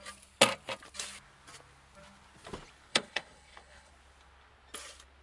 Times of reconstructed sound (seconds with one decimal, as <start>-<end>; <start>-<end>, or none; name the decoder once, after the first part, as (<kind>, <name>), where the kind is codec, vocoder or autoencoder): 2.9-3.9 (codec, HILCodec)